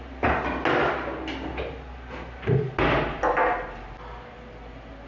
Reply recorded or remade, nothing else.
recorded